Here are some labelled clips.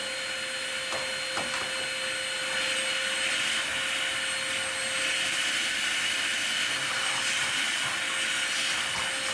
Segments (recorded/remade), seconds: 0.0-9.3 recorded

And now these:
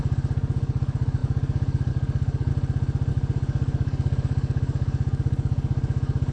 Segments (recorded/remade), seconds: 0.0-2.5 remade; 2.5-3.1 recorded; 3.1-6.3 remade

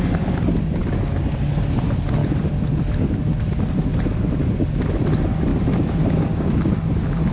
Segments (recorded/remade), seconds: 0.0-5.5 recorded; 5.5-6.7 remade; 6.7-7.3 recorded

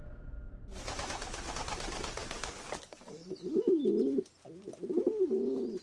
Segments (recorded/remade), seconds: 0.0-2.2 recorded; 2.2-3.8 remade; 3.8-5.8 recorded

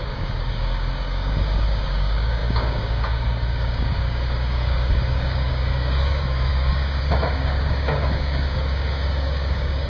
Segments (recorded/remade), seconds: 0.0-9.9 remade

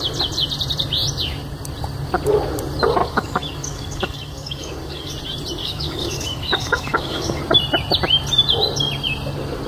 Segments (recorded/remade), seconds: 0.0-3.0 recorded; 3.0-5.1 remade; 5.1-5.6 recorded; 5.6-7.4 remade; 7.4-9.7 recorded